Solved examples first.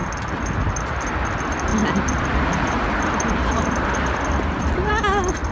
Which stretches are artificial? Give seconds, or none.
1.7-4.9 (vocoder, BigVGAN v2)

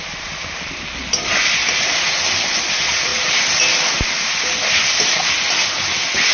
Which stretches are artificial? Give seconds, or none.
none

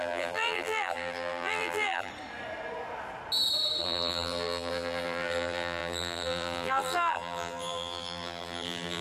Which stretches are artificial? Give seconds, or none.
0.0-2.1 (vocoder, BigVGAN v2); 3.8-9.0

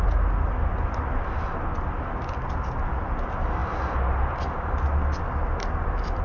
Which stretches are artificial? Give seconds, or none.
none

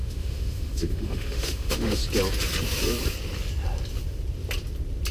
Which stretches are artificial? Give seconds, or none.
0.0-2.0 (autoencoder, DAC-VAE)